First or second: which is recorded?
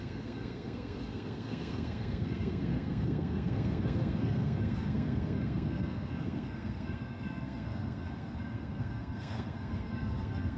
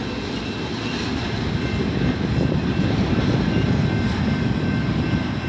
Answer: second